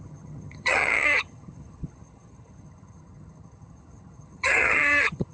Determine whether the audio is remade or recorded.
remade